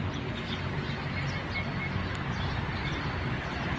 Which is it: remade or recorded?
recorded